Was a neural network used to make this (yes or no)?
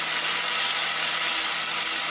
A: no